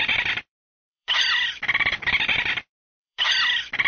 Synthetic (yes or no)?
yes